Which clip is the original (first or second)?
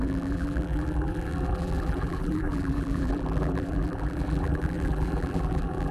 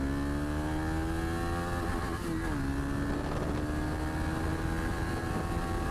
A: second